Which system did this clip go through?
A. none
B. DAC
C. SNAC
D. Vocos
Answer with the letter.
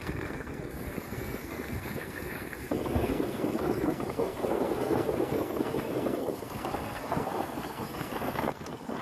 C